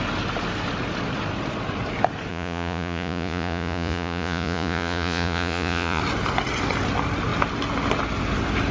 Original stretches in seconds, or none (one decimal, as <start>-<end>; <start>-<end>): 0.0-2.3; 6.0-8.7

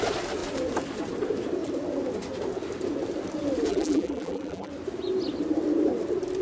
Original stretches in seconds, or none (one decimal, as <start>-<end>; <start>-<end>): 0.0-3.7; 4.7-6.4

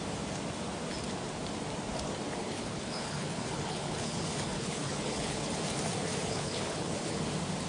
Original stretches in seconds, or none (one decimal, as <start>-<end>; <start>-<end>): 0.0-2.4; 5.6-6.1; 7.2-7.7

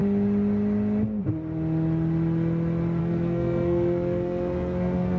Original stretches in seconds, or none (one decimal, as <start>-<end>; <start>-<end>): 0.0-3.0

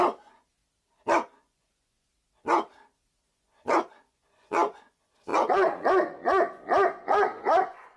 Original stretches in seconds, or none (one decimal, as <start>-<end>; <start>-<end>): 0.6-1.4; 2.1-3.3

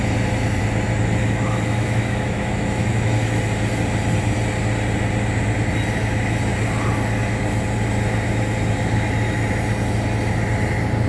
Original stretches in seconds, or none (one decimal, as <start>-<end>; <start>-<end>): 0.0-1.2; 3.5-11.1

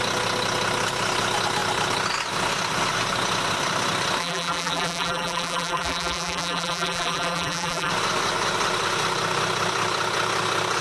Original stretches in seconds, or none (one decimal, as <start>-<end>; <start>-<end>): 0.0-4.2; 7.9-10.8